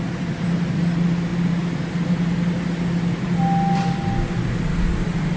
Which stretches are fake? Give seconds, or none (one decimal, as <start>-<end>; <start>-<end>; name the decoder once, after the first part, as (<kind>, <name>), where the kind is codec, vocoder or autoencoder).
none

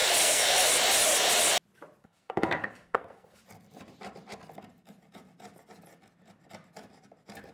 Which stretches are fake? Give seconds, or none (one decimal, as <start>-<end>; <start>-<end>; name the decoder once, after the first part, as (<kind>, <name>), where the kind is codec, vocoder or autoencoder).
0.0-0.7 (codec, SNAC); 2.0-3.4